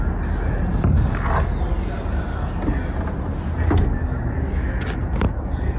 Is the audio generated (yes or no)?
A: no